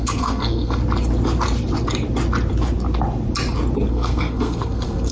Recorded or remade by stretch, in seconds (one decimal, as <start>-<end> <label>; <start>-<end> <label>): 0.0-0.8 remade; 0.8-3.9 recorded; 3.9-5.1 remade